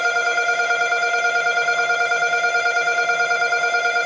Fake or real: fake